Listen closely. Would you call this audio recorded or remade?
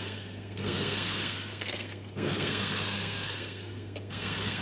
remade